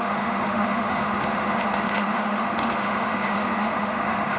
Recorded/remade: remade